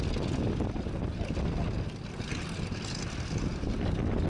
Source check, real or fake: real